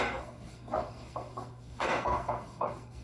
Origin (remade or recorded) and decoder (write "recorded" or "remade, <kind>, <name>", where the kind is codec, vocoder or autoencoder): remade, codec, SNAC